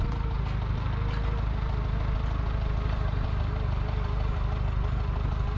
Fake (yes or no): no